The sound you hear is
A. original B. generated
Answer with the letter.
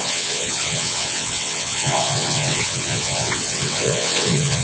B